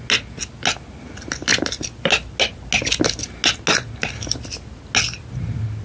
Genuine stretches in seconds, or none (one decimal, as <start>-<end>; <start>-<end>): 0.0-5.8